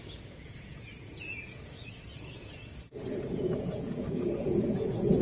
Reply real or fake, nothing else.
fake